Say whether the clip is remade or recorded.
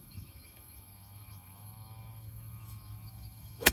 remade